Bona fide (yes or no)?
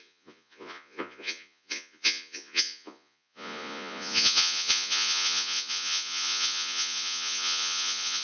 no